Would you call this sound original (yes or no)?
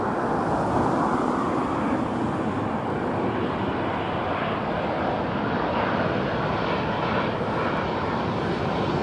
yes